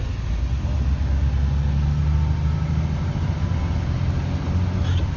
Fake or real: real